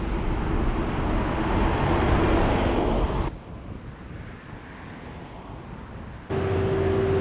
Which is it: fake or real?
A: real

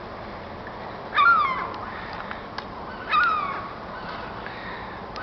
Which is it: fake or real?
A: real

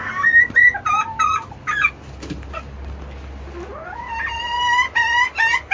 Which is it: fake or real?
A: real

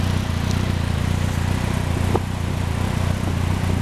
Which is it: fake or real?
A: real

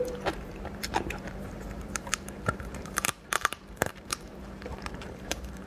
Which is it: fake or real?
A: fake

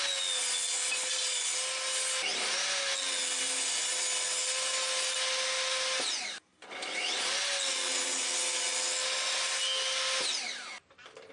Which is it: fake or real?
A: real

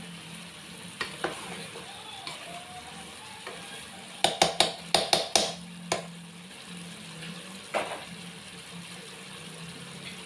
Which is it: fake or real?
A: real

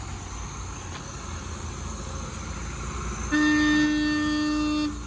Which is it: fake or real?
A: real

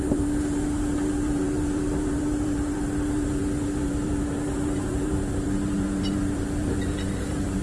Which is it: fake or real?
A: fake